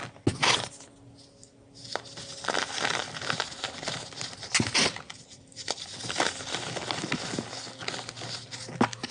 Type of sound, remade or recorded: recorded